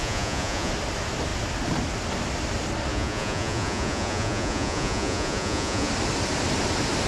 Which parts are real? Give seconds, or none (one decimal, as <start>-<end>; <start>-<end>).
0.7-2.9; 5.9-7.1